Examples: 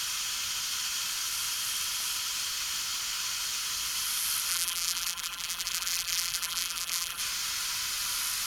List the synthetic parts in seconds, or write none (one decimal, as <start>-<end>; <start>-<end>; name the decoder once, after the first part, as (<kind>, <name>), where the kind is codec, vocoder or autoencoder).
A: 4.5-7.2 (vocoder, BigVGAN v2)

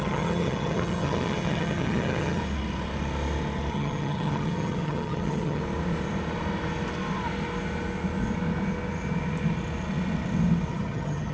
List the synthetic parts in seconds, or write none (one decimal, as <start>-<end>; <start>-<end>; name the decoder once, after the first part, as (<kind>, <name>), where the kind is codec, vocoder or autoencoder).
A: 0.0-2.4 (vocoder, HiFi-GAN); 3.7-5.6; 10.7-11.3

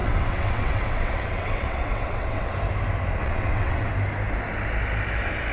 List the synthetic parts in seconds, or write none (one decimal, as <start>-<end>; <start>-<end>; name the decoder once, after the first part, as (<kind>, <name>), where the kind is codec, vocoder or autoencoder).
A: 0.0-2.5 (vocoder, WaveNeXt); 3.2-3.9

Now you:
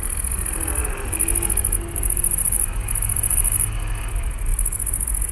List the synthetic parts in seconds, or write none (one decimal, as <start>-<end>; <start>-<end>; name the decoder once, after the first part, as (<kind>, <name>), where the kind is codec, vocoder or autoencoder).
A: none